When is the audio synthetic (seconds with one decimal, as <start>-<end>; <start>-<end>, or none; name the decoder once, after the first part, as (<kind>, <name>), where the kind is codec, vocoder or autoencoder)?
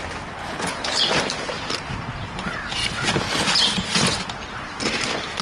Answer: 0.4-1.0 (codec, HILCodec)